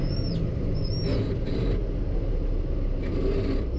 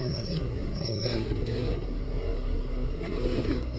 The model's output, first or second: second